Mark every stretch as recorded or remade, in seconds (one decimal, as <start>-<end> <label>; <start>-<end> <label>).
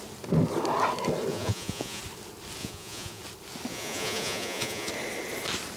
0.0-1.3 recorded; 1.3-2.0 remade; 2.0-2.6 recorded; 2.6-3.2 remade; 3.2-3.7 recorded; 3.7-4.9 remade; 4.9-5.8 recorded